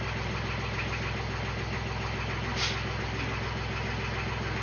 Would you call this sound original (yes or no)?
yes